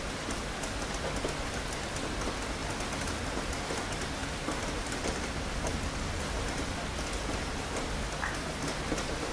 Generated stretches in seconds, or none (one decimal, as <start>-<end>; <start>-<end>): 4.2-5.7